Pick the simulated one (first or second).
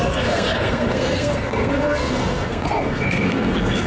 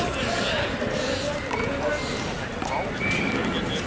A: first